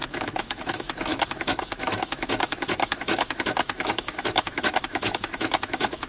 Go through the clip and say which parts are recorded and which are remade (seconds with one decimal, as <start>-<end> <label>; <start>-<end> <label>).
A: 0.0-6.1 remade